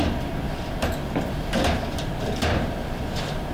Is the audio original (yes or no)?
yes